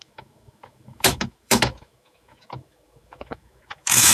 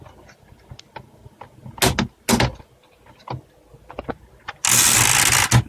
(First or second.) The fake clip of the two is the first